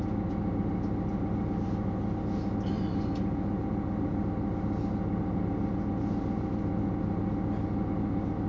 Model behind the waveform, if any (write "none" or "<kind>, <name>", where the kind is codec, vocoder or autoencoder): none